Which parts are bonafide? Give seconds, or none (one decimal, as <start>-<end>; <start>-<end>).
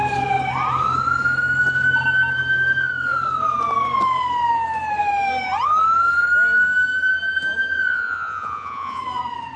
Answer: 0.0-7.9; 9.0-9.6